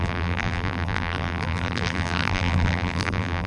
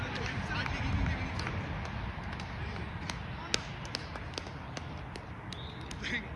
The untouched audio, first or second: second